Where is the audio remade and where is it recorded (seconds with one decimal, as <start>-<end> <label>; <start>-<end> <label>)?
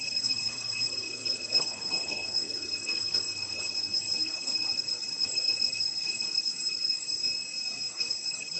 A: 0.0-7.2 remade; 7.2-7.9 recorded; 7.9-8.6 remade